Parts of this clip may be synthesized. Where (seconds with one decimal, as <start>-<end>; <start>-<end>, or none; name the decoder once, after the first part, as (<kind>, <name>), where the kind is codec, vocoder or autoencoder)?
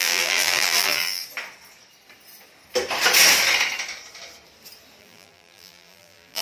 0.0-1.2 (vocoder, BigVGAN v2); 5.0-6.4